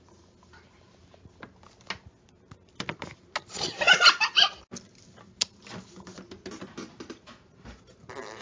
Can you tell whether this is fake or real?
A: real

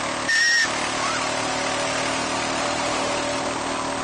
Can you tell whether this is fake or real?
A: real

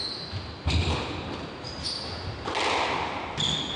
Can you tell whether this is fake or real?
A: real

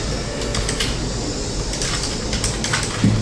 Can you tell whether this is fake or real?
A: real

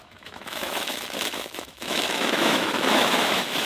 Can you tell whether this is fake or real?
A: fake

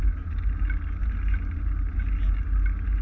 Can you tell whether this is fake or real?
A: real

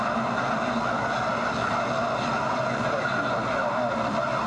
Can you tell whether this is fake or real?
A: real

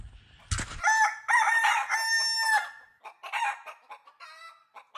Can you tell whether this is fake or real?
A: real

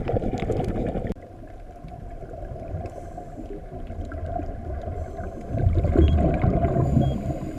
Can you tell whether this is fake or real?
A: fake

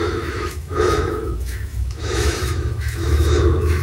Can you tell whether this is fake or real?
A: fake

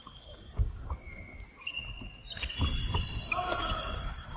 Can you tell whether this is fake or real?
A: real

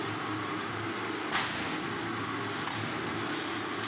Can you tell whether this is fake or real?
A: real